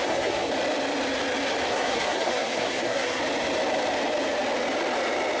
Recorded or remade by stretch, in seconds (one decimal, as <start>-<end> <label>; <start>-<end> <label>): 0.0-0.5 remade; 0.5-1.7 recorded; 1.7-3.2 remade; 3.2-5.4 recorded